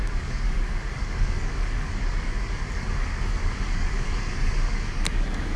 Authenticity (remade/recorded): remade